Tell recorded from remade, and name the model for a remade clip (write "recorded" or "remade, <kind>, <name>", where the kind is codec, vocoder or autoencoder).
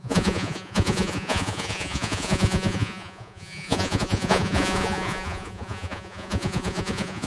remade, vocoder, Vocos